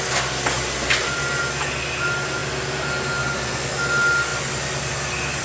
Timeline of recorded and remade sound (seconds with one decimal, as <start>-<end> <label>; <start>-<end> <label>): 0.0-5.4 recorded